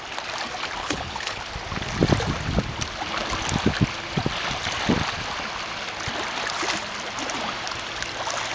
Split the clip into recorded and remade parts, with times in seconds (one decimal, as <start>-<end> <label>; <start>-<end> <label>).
0.0-0.8 recorded; 0.8-1.4 remade; 1.4-8.5 recorded